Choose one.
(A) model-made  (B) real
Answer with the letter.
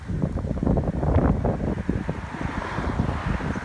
B